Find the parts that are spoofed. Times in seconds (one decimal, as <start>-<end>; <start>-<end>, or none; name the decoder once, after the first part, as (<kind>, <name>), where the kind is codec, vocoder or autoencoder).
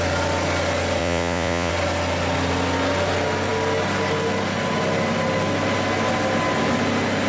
1.0-1.7 (vocoder, Vocos)